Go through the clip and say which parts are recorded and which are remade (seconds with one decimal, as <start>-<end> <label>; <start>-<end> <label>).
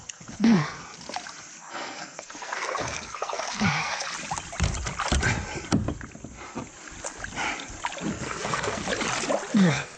0.0-0.8 remade; 0.8-1.6 recorded; 1.6-4.0 remade; 4.0-8.1 recorded; 8.1-8.8 remade; 8.8-9.5 recorded; 9.5-10.0 remade